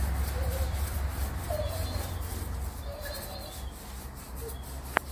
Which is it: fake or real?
real